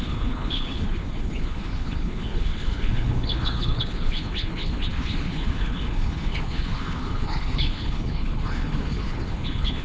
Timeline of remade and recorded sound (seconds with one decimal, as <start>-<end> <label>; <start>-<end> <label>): 0.0-9.8 remade